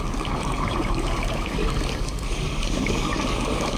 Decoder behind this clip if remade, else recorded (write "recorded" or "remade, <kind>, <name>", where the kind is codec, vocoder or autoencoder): remade, codec, DAC